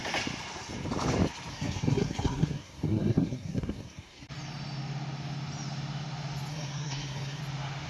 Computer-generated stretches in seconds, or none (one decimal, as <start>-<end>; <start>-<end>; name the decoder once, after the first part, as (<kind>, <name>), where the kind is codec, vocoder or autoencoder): 1.5-4.3 (codec, SNAC); 6.5-7.4